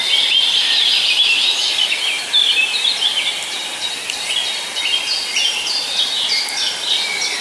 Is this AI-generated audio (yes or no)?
no